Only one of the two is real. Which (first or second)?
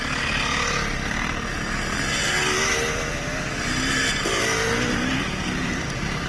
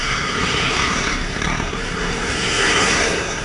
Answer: first